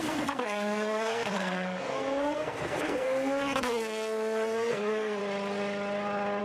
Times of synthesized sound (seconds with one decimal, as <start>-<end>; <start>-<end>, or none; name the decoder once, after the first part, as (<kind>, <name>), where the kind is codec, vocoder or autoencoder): 0.0-5.2 (codec, SNAC)